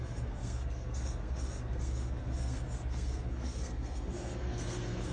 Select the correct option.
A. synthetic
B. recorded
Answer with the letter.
A